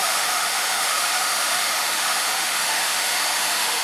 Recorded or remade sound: remade